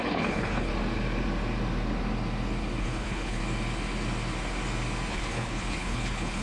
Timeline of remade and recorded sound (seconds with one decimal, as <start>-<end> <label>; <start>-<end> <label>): 0.0-0.7 remade; 0.7-2.8 recorded; 2.8-3.4 remade; 3.4-5.1 recorded; 5.1-6.4 remade